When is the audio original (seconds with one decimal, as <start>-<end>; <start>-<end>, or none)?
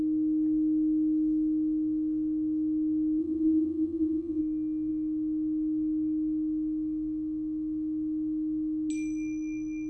0.0-3.2; 4.4-9.9